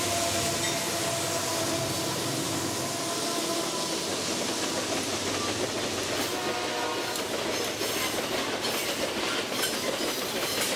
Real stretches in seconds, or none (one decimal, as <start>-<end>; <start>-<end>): 0.0-1.5; 2.1-10.8